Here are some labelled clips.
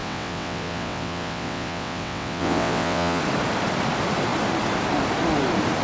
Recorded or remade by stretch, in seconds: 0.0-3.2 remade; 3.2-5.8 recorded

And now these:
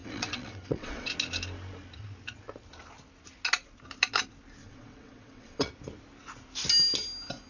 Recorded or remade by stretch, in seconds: 0.0-1.1 remade; 1.1-4.6 recorded; 4.6-5.7 remade; 5.7-7.5 recorded

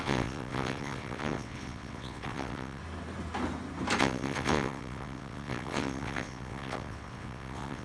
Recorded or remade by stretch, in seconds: 0.0-2.8 remade; 2.8-4.0 recorded; 4.0-7.8 remade

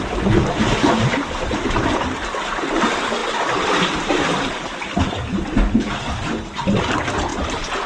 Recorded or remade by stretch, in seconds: 0.0-7.9 recorded

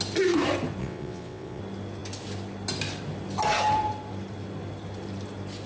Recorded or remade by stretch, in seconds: 0.0-0.8 recorded; 0.8-1.6 remade; 1.6-5.7 recorded

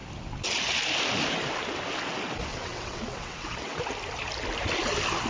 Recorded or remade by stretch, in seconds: 0.0-2.5 recorded; 2.5-3.8 remade; 3.8-5.3 recorded